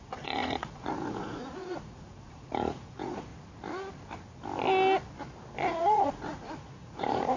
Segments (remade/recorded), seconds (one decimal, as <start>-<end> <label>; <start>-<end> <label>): 0.0-3.3 remade; 3.3-5.7 recorded; 5.7-7.4 remade